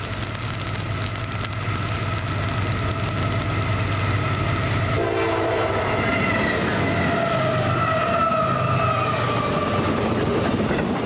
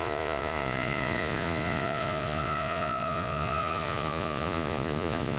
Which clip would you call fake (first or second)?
second